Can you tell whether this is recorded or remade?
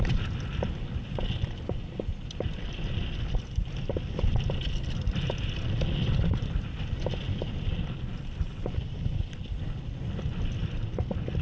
recorded